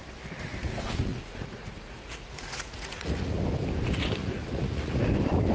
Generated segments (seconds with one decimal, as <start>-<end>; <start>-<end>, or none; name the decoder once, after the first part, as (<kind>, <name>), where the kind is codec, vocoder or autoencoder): 1.1-3.3 (vocoder, Vocos); 4.2-5.0